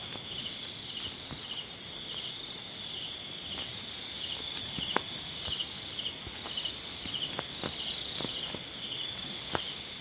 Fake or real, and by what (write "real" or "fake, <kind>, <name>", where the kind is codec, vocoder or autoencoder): real